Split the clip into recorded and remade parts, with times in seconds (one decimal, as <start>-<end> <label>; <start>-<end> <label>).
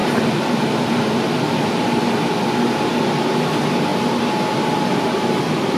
0.0-2.0 remade; 2.0-5.8 recorded